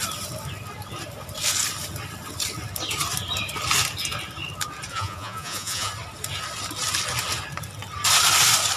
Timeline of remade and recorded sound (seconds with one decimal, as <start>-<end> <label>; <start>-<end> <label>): 0.0-4.9 recorded; 4.9-5.9 remade; 5.9-8.8 recorded